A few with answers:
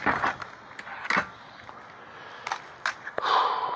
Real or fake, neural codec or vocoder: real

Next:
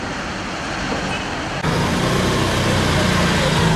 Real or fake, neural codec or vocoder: real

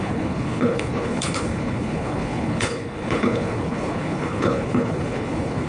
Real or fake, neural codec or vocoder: fake, codec, HILCodec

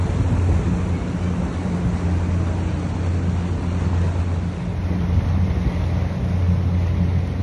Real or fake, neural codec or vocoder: real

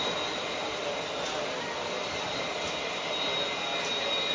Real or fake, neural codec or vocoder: real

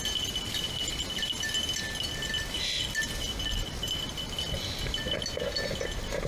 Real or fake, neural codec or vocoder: real